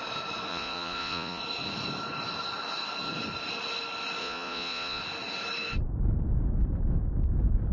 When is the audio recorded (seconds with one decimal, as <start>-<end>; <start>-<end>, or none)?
0.0-0.5; 1.4-4.2; 5.0-7.7